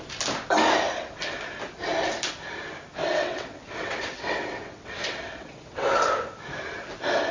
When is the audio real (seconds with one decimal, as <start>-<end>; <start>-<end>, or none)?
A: 0.0-3.0; 5.9-7.3

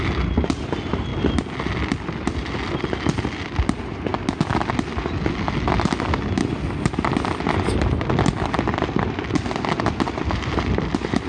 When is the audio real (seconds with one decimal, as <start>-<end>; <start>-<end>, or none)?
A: 0.0-11.3